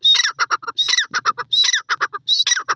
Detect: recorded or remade recorded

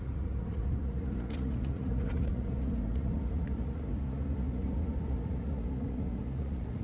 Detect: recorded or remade remade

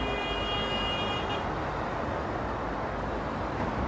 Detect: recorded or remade recorded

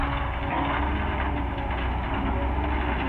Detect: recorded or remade recorded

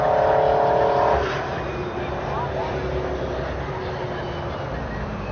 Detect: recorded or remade recorded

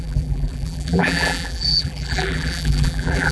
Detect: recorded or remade remade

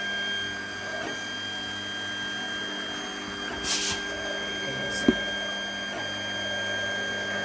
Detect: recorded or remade recorded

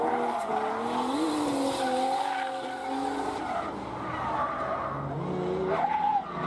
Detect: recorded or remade recorded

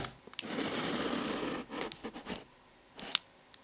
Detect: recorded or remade recorded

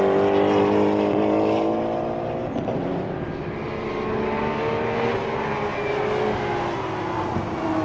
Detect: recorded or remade recorded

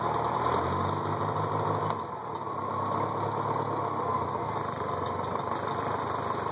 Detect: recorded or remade recorded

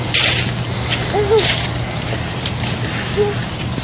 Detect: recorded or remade recorded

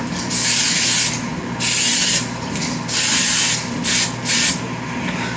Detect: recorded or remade recorded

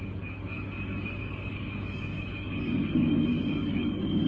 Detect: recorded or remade remade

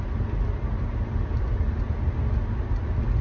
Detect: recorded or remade recorded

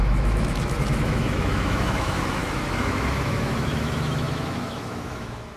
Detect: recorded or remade remade